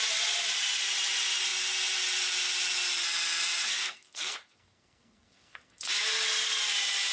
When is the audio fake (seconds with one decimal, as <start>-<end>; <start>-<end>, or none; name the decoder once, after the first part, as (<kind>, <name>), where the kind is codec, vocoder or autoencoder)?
3.8-5.9 (codec, SNAC)